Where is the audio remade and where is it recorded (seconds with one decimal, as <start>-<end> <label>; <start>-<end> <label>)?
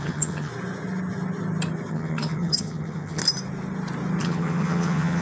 0.0-0.5 remade; 0.5-1.9 recorded; 1.9-3.2 remade; 3.2-4.2 recorded; 4.2-5.2 remade